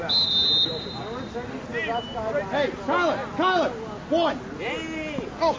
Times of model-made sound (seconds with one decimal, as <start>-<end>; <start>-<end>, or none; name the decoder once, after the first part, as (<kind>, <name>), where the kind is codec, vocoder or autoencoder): none